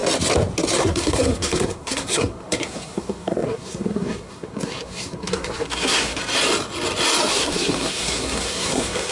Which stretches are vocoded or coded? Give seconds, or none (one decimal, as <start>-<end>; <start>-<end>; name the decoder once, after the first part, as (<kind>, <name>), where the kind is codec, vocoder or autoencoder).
0.8-6.2 (codec, SNAC); 7.3-9.1